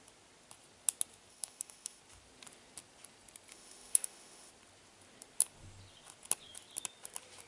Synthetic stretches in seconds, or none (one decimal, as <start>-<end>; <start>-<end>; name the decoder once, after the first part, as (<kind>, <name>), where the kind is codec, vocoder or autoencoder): 1.3-2.0 (autoencoder, DAC-VAE); 3.5-4.5